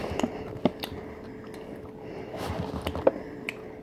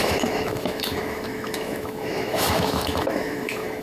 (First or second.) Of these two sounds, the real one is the first